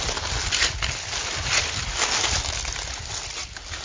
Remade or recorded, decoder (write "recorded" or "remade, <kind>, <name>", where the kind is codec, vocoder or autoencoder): recorded